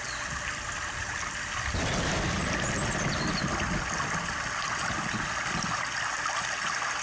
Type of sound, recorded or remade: recorded